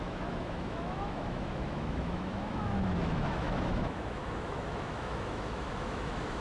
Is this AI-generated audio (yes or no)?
yes